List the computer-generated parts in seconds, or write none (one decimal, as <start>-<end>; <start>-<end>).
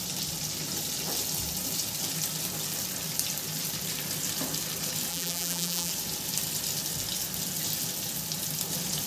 5.1-5.9